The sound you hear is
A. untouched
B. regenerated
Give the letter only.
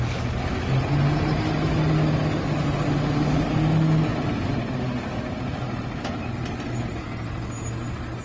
A